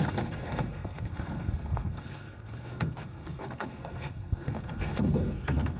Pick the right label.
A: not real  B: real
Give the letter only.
A